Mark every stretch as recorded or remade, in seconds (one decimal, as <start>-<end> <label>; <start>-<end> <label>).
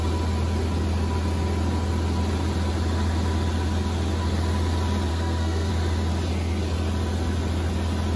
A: 0.0-5.1 recorded; 5.1-5.7 remade; 5.7-8.2 recorded